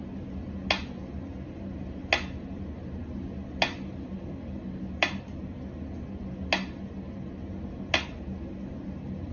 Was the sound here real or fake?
real